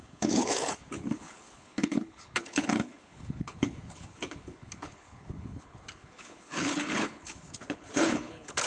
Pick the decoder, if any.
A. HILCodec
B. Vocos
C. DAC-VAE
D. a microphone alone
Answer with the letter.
A